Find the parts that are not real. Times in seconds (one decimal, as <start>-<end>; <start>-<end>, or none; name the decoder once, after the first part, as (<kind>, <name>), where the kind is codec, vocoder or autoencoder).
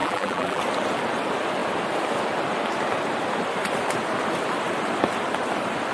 0.0-0.6 (vocoder, BigVGAN v2)